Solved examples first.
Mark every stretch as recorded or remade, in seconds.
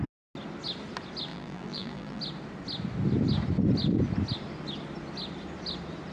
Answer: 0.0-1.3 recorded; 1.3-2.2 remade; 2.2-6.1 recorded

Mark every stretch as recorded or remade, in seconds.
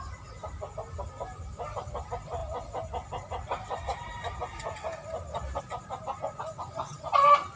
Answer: 0.0-7.6 recorded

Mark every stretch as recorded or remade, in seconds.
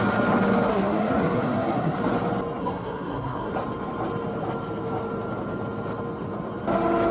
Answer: 0.0-0.7 recorded; 0.7-2.0 remade; 2.0-2.6 recorded; 2.6-3.5 remade; 3.5-7.1 recorded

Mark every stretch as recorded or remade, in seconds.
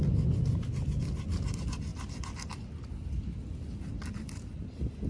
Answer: 0.0-5.1 recorded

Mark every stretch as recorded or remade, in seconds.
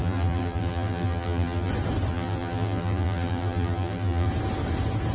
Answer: 0.0-1.7 remade; 1.7-2.1 recorded; 2.1-4.3 remade; 4.3-5.1 recorded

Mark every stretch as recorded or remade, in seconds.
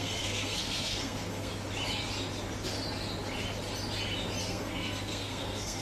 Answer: 0.0-1.5 remade; 1.5-4.4 recorded; 4.4-5.8 remade